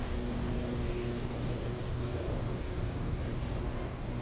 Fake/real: fake